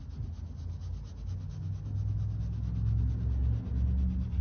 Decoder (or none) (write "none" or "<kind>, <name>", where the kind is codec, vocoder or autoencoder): none